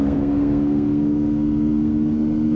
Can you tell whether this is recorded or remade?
remade